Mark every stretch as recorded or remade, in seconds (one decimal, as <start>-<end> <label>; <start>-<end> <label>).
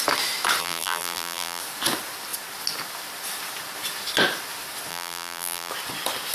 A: 0.0-0.6 recorded; 0.6-1.6 remade; 1.6-4.9 recorded; 4.9-5.7 remade; 5.7-6.3 recorded